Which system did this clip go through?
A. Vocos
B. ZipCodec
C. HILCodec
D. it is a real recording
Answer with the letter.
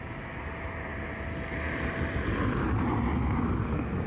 D